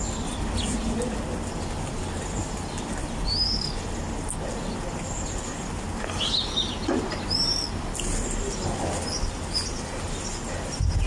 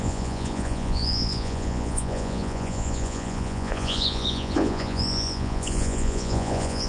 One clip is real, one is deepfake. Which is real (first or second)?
first